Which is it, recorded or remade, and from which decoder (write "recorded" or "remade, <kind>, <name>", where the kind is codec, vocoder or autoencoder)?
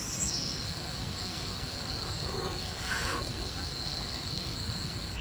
remade, codec, SNAC